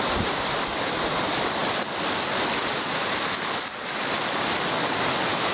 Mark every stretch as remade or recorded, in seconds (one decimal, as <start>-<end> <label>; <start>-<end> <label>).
0.0-5.5 recorded